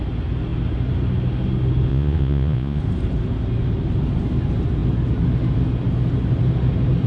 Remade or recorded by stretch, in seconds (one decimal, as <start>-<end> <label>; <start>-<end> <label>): 0.0-1.9 recorded; 1.9-2.8 remade; 2.8-7.1 recorded